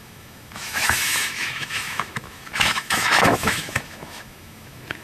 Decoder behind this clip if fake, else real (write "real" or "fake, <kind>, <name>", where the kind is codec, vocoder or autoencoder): fake, autoencoder, DAC-VAE